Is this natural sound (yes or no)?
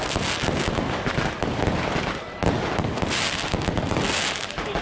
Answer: yes